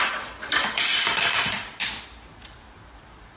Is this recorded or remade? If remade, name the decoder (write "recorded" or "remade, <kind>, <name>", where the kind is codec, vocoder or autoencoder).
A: remade, vocoder, BigVGAN v2